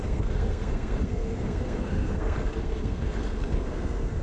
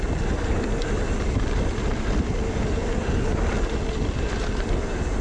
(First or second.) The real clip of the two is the second